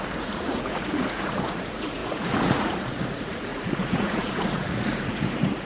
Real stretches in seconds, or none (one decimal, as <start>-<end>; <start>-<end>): none